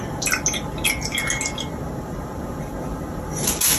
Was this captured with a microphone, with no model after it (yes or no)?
yes